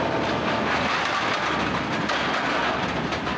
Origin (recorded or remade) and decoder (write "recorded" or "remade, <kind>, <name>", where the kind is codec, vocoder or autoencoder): recorded